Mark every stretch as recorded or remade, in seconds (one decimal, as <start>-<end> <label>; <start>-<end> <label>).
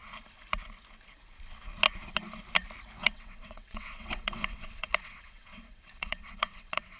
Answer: 0.0-3.0 recorded; 3.0-7.0 remade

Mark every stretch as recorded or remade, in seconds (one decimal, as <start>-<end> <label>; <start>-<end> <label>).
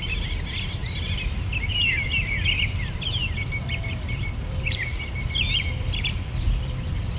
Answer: 0.0-7.2 remade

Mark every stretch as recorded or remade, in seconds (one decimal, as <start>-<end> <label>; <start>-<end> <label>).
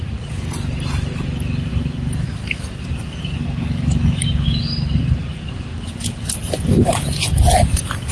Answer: 0.0-8.1 recorded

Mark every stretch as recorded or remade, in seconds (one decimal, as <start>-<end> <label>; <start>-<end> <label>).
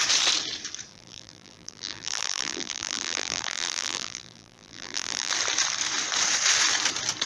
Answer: 0.0-0.9 recorded; 0.9-5.3 remade; 5.3-7.3 recorded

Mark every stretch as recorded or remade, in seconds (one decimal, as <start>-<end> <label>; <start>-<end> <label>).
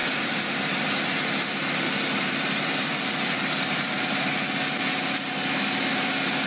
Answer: 0.0-6.5 recorded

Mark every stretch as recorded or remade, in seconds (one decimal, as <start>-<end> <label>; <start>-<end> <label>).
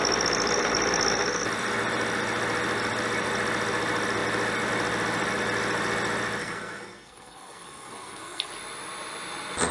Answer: 0.0-6.4 recorded; 6.4-8.5 remade; 8.5-9.7 recorded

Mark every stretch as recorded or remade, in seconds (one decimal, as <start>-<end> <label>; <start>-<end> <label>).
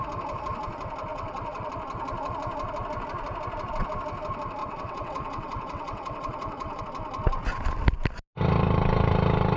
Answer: 0.0-1.1 recorded; 1.1-1.7 remade; 1.7-4.6 recorded; 4.6-6.8 remade; 6.8-9.6 recorded